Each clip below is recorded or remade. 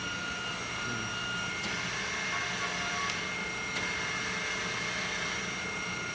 recorded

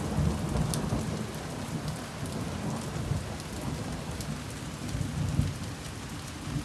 recorded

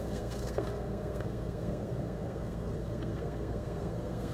remade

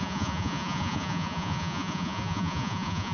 remade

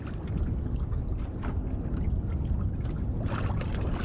recorded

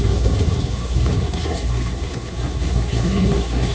remade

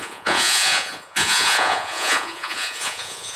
remade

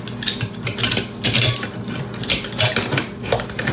recorded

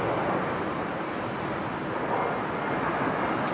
recorded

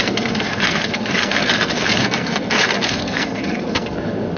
remade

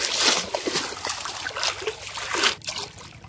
recorded